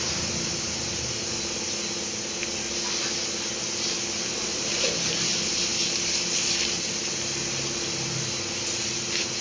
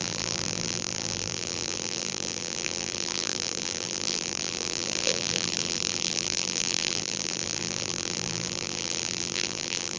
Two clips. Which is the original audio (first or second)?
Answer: first